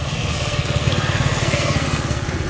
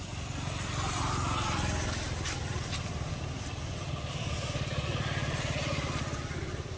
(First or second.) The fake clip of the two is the first